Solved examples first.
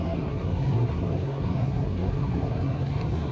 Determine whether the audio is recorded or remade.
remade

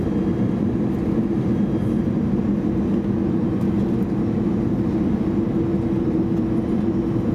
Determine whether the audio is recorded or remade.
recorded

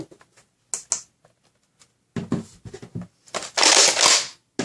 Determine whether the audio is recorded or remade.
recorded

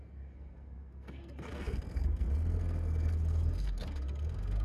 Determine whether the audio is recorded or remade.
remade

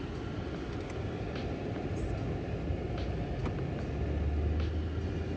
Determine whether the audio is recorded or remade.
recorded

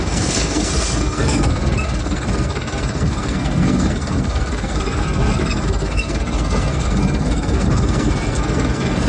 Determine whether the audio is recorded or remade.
remade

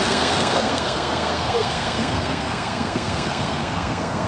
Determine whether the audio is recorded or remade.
remade